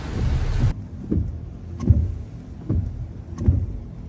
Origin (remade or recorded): recorded